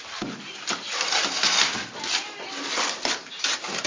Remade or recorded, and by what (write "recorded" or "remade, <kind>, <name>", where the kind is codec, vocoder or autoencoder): recorded